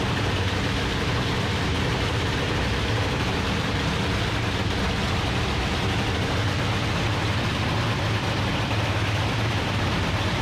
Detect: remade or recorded remade